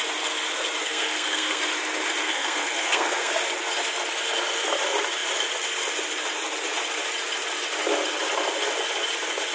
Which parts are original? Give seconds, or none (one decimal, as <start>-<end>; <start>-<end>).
0.0-0.8; 1.6-2.2; 3.3-9.5